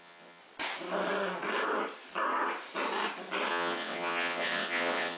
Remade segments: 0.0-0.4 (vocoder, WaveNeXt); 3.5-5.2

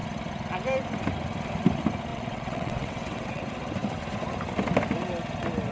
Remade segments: 2.1-3.4 (vocoder, WaveNeXt)

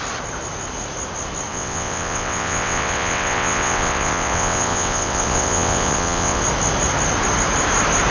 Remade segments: 1.5-6.4 (vocoder, WaveNeXt)

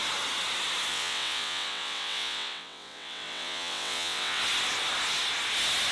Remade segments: 0.9-4.4 (vocoder, WaveNeXt)

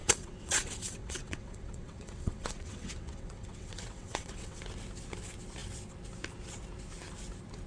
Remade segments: 0.0-4.6 (vocoder, WaveNeXt)

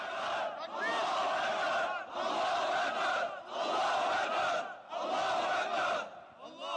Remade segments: none

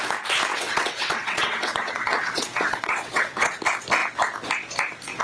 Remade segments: 0.5-3.6 (vocoder, WaveNeXt)